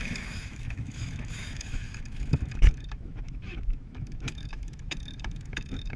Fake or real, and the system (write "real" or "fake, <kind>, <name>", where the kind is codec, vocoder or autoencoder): fake, autoencoder, DAC-VAE